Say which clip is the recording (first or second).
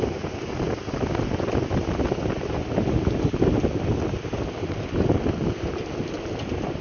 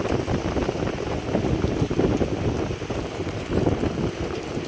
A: first